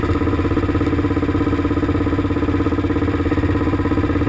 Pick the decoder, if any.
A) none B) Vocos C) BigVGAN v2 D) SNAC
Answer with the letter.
A